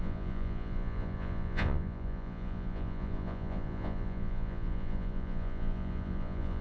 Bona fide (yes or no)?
no